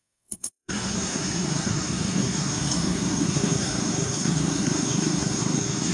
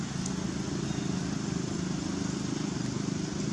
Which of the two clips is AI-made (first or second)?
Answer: first